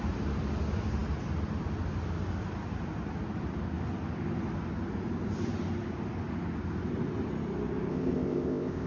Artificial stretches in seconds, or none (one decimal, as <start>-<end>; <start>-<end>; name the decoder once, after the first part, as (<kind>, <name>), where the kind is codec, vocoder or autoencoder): 7.9-8.9 (codec, ZipCodec)